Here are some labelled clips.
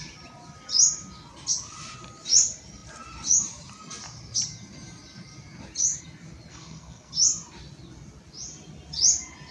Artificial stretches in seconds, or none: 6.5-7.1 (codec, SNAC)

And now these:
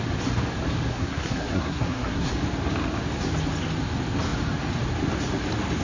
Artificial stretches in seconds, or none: 0.9-2.3 (codec, SNAC)

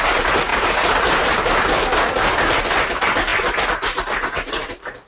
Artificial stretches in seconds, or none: none

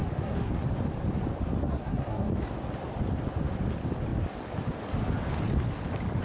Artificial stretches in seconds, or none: 0.0-0.5 (codec, SNAC); 1.6-2.3

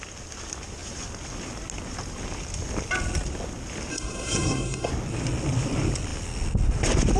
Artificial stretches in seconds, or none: 3.9-4.9 (codec, SNAC)

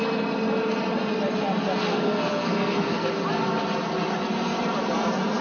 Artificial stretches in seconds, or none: 1.9-3.1 (codec, SNAC)